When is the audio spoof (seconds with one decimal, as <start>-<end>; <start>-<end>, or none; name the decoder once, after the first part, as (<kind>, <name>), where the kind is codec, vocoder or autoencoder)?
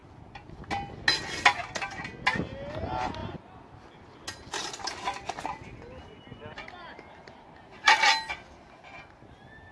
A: none